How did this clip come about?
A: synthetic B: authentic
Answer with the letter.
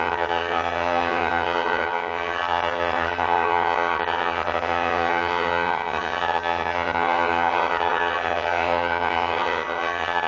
A